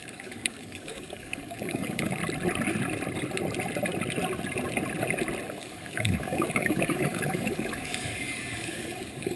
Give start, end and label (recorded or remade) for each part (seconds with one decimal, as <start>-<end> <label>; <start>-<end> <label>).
0.0-2.2 remade; 2.2-5.6 recorded; 5.6-9.4 remade

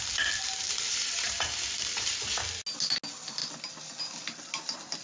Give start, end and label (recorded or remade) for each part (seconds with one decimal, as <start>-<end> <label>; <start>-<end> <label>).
0.0-0.7 recorded; 0.7-2.1 remade; 2.1-5.0 recorded

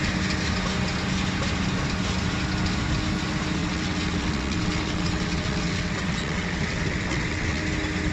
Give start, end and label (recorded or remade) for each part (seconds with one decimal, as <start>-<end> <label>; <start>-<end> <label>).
0.0-3.6 recorded; 3.6-7.6 remade; 7.6-8.1 recorded